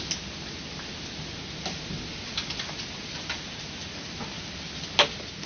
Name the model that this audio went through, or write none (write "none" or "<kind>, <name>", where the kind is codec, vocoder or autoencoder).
none